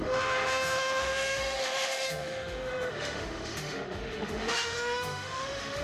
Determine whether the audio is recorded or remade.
remade